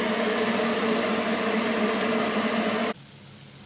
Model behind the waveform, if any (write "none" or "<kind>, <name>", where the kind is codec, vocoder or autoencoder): none